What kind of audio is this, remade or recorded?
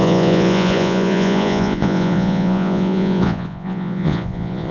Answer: remade